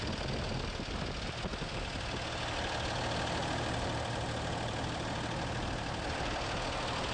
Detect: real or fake real